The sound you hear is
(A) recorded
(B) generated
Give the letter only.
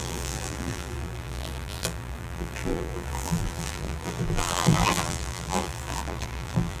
B